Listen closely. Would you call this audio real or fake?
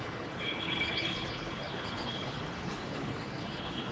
fake